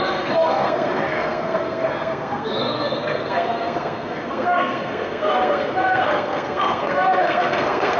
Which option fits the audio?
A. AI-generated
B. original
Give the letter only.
A